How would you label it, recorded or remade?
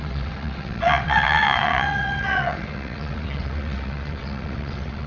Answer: remade